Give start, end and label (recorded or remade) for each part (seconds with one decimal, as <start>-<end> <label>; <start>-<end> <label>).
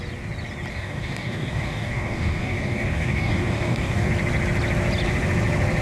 0.0-0.7 recorded; 0.7-4.1 remade; 4.1-5.8 recorded